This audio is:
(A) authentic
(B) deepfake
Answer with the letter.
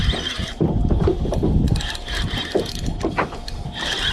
A